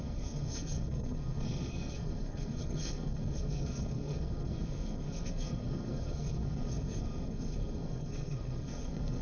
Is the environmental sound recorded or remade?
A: remade